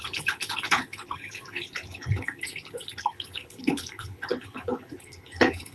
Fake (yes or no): yes